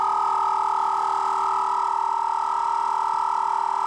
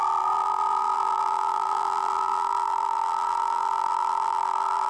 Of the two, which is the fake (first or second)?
second